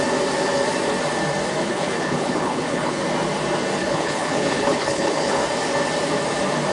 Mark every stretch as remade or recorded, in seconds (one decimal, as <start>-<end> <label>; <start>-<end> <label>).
0.0-1.6 recorded; 1.6-3.0 remade; 3.0-3.8 recorded; 3.8-5.4 remade; 5.4-6.7 recorded